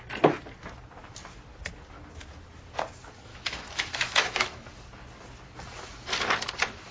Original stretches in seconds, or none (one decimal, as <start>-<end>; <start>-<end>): 0.0-3.3; 4.7-6.9